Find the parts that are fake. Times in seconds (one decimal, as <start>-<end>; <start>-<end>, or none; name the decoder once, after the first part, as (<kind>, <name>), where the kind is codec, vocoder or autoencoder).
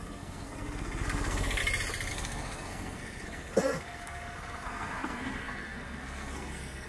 0.0-1.6 (codec, SNAC); 2.1-6.9